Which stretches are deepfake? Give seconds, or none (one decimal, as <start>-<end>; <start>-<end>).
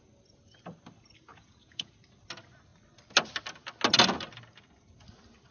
1.3-1.9